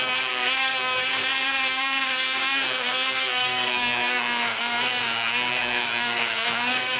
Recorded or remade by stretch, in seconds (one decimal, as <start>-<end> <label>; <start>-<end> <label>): 0.0-7.0 remade